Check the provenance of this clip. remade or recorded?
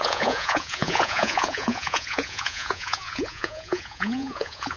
remade